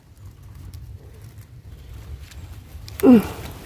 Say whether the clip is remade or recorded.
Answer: remade